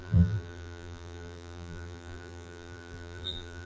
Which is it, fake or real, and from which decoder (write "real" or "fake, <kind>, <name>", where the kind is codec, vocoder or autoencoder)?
fake, vocoder, BigVGAN v2